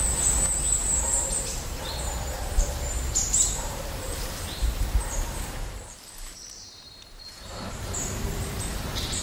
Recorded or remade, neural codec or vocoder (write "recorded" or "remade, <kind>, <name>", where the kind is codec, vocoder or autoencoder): remade, vocoder, BigVGAN v2